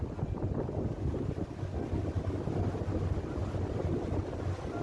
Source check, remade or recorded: recorded